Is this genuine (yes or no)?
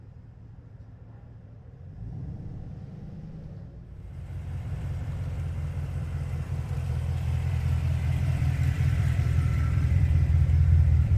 no